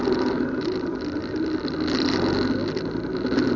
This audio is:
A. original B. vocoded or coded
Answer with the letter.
A